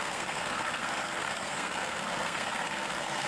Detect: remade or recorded remade